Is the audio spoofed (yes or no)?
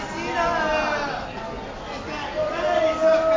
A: no